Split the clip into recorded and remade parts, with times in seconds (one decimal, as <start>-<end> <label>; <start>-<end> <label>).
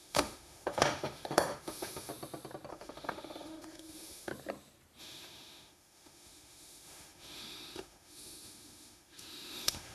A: 0.0-2.1 remade; 2.1-2.7 recorded; 2.7-4.3 remade; 4.3-5.0 recorded; 5.0-9.9 remade